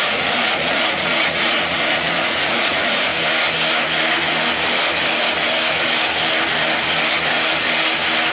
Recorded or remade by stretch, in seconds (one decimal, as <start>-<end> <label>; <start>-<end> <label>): 0.0-3.1 remade; 3.1-8.3 recorded